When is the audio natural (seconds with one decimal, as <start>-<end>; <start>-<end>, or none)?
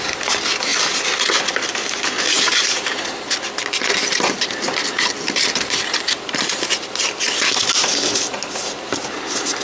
0.0-9.6